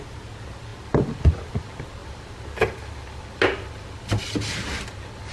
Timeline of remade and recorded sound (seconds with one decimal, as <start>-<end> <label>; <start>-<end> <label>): 0.0-5.3 recorded